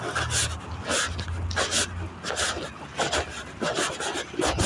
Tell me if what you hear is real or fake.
real